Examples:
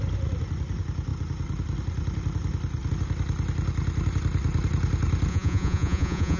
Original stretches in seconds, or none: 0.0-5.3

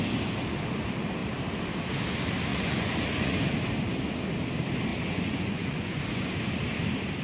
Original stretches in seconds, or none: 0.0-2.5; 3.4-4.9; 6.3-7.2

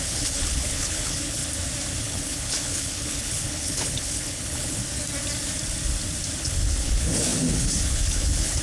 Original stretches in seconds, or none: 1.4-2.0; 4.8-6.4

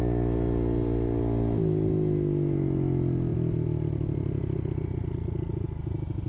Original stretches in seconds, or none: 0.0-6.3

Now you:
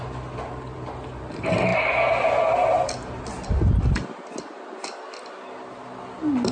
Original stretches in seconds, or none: 0.0-6.5